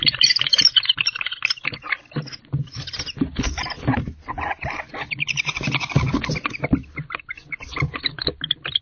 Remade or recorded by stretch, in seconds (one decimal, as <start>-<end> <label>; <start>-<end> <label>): 0.0-8.8 recorded